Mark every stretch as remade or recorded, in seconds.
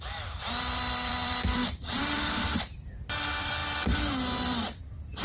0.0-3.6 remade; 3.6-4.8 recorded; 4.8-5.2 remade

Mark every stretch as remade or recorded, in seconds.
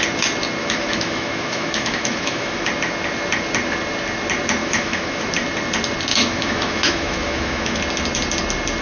0.0-0.6 recorded; 0.6-2.7 remade; 2.7-4.6 recorded; 4.6-5.3 remade; 5.3-6.1 recorded; 6.1-7.8 remade; 7.8-8.8 recorded